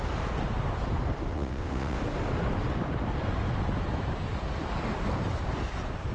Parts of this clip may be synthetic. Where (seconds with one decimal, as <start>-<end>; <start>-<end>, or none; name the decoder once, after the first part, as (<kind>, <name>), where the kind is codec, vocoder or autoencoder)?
1.3-2.0 (vocoder, WaveNeXt)